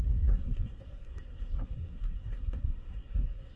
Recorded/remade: remade